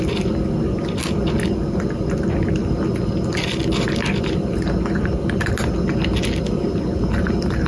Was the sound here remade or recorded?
recorded